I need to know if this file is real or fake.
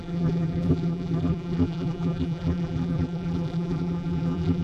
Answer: fake